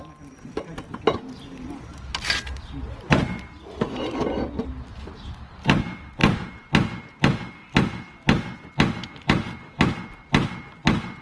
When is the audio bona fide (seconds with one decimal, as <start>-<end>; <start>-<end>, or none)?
0.0-11.2